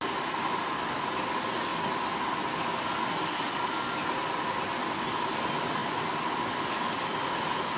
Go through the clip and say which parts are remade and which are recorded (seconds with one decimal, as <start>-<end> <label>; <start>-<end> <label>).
0.0-5.8 recorded; 5.8-6.3 remade; 6.3-7.8 recorded